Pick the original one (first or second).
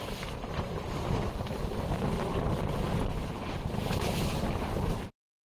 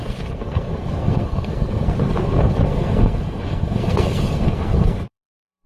first